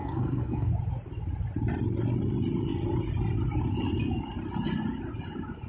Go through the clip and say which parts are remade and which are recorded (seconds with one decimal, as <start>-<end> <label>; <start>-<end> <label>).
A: 0.0-0.7 remade; 0.7-5.7 recorded